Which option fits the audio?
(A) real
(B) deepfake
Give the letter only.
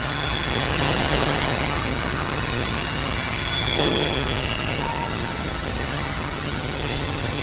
B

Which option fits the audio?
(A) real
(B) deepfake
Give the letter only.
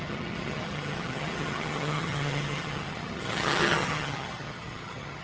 B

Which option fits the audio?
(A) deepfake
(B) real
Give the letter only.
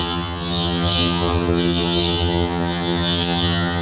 A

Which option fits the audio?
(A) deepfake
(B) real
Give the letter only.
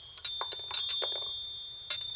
B